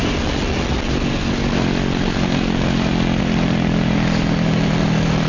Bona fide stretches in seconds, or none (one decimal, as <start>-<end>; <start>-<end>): 0.0-5.3